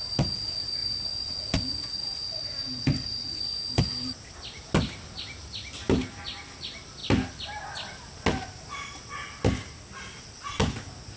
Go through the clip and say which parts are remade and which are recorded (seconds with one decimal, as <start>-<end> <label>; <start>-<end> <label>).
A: 0.0-11.2 recorded